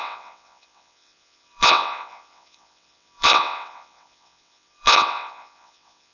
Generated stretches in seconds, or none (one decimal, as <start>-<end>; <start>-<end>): 0.0-6.1

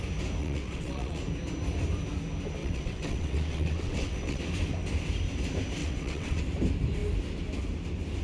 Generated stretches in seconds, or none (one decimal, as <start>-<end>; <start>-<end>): 0.4-1.2; 2.6-4.4; 5.8-6.4

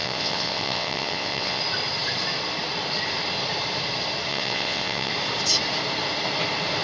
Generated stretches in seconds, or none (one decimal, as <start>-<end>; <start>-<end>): 0.0-1.6; 4.3-5.1

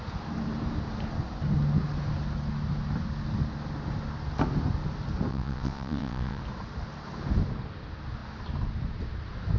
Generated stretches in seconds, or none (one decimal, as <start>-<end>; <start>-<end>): 5.3-6.4

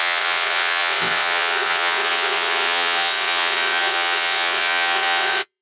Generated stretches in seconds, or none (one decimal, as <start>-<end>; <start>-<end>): 0.0-5.6

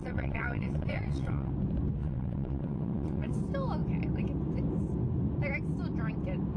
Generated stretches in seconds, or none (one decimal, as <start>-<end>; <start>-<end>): 0.0-1.5; 2.0-3.3

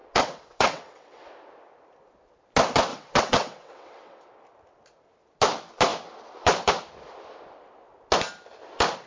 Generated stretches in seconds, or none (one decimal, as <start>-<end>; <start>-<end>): 0.0-1.3; 2.9-4.3

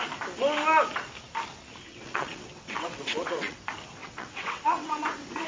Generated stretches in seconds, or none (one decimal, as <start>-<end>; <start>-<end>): 1.9-3.6; 4.0-5.0